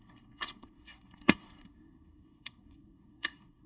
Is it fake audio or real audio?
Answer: fake